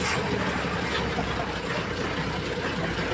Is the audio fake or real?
real